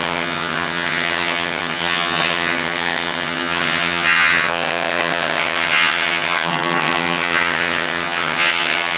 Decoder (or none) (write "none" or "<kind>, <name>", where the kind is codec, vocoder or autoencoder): vocoder, HiFi-GAN